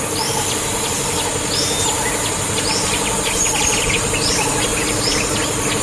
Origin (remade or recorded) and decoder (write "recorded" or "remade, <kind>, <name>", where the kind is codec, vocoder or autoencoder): recorded